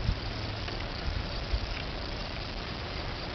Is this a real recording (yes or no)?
no